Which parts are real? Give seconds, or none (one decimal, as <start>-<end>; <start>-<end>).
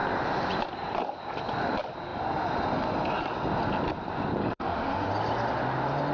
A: 0.0-4.4; 5.1-6.1